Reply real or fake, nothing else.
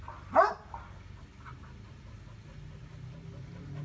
real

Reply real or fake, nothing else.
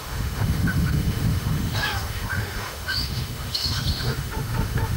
fake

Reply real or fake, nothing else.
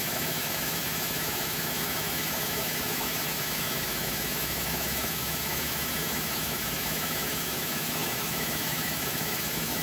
fake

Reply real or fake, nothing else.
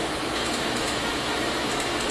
fake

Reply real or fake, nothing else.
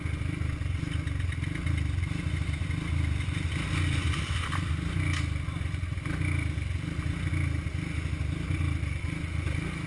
real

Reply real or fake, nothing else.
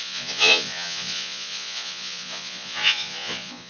fake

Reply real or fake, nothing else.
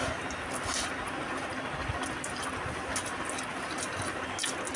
real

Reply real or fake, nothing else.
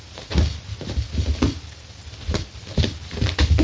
real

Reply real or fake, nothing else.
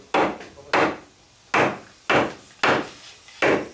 real